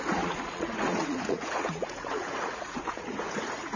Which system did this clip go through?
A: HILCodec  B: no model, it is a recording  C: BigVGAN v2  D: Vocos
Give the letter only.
D